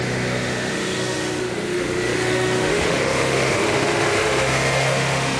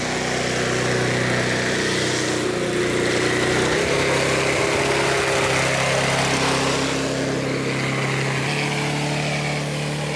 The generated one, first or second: first